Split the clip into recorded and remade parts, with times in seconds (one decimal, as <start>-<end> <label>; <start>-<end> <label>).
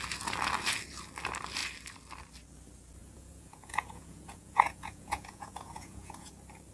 0.0-3.0 recorded; 3.0-6.3 remade; 6.3-6.7 recorded